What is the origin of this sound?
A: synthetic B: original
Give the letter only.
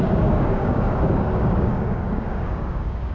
A